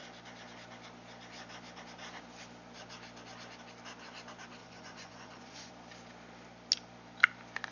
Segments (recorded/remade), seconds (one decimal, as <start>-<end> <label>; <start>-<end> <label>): 0.0-4.6 recorded; 4.6-5.7 remade; 5.7-7.7 recorded